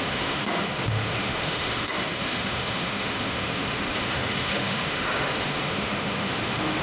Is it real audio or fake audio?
fake